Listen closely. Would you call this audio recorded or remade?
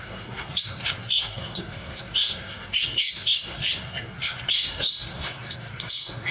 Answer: remade